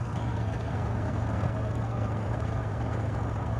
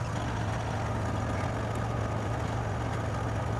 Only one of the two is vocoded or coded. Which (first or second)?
first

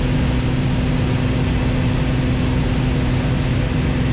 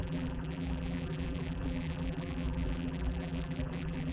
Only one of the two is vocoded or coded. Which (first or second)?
second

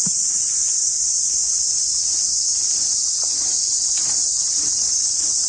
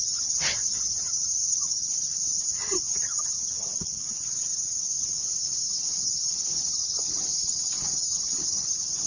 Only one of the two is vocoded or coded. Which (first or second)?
second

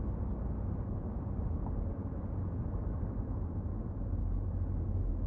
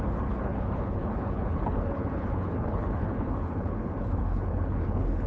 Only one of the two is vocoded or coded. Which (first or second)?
second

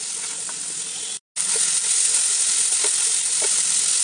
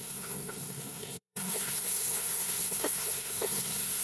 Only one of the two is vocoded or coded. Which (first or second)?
second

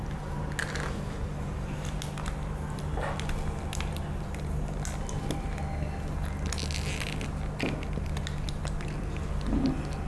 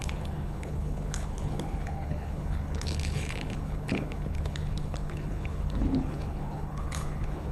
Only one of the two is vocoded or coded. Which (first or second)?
second